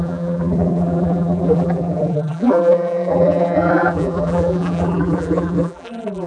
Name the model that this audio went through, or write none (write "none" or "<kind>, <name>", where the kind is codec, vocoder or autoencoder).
vocoder, BigVGAN v2